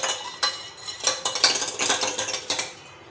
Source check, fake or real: real